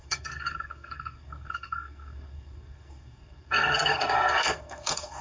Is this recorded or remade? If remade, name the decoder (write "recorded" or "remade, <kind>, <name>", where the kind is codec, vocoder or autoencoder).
remade, codec, SNAC